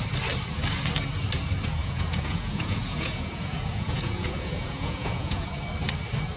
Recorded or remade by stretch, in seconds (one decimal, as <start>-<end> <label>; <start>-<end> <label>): 0.0-1.8 recorded; 1.8-5.6 remade; 5.6-6.4 recorded